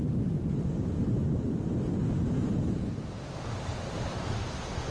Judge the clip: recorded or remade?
recorded